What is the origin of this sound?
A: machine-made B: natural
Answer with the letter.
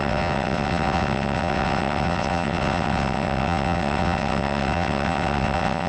A